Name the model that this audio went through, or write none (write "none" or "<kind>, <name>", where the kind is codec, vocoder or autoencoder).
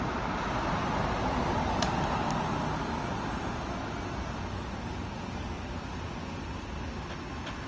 none